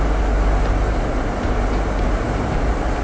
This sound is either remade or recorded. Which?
recorded